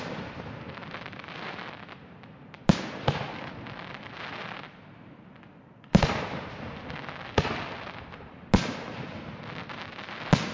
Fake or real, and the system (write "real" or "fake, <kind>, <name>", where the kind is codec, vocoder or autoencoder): real